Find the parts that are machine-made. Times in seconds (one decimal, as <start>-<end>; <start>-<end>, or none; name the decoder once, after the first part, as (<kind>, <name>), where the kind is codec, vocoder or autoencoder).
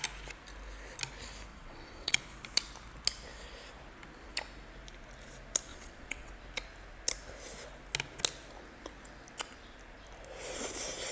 1.5-2.2 (vocoder, WaveNeXt); 5.7-6.3